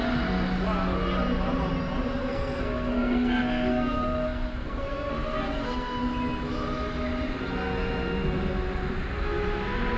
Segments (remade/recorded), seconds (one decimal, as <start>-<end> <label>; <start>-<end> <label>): 0.0-2.2 recorded; 2.2-6.0 remade; 6.0-10.0 recorded